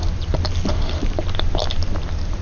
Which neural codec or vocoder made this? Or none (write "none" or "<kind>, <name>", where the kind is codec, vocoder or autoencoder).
none